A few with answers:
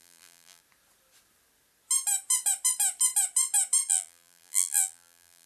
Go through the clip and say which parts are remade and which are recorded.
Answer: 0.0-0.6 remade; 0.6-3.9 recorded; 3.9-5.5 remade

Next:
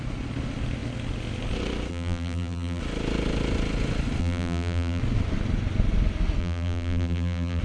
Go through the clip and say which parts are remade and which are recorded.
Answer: 0.0-1.9 recorded; 1.9-2.8 remade; 2.8-4.2 recorded; 4.2-5.0 remade; 5.0-6.4 recorded; 6.4-7.6 remade

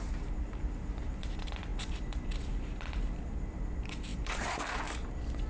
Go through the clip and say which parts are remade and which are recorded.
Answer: 0.0-5.5 remade

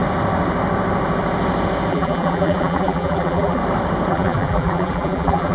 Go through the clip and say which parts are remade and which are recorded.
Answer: 0.0-1.9 recorded; 1.9-3.6 remade; 3.6-4.1 recorded; 4.1-5.5 remade

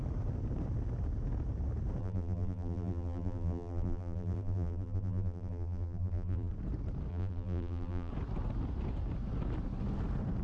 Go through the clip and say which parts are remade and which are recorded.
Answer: 0.0-2.0 recorded; 2.0-6.5 remade; 6.5-7.1 recorded; 7.1-8.1 remade; 8.1-10.4 recorded